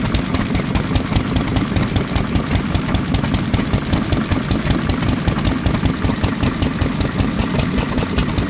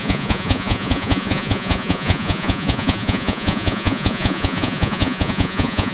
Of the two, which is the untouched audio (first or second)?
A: first